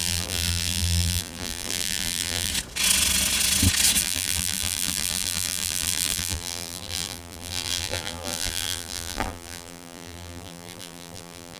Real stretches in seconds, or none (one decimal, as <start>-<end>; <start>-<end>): 2.5-4.0

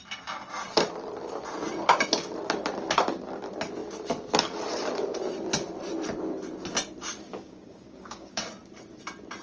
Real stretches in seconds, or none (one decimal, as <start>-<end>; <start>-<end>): 0.0-7.3; 8.4-9.4

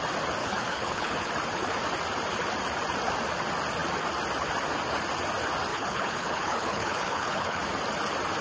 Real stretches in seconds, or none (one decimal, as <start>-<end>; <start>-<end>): 0.0-0.4; 1.3-5.7; 7.6-8.4

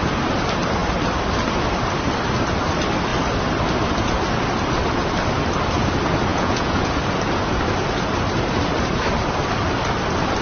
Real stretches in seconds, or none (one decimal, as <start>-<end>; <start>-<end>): 0.0-6.3; 6.9-10.4

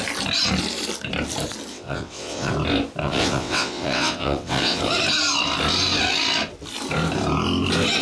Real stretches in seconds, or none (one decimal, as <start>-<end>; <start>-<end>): 0.0-1.7; 2.5-3.0; 4.8-8.0

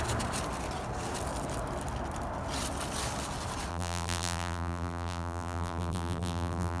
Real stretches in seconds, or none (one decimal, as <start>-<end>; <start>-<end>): 0.0-3.7

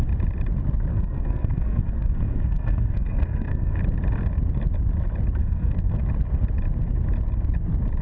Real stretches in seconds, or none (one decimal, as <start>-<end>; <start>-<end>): 0.0-0.9; 3.8-5.4; 6.0-8.0

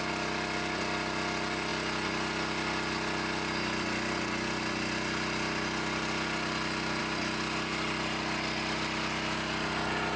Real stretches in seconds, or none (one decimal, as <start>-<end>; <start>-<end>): 0.0-10.2